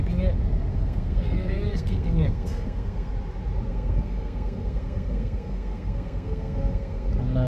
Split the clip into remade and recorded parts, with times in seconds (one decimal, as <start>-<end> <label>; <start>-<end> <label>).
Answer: 0.0-0.7 recorded; 0.7-3.1 remade; 3.1-3.7 recorded; 3.7-7.1 remade; 7.1-7.5 recorded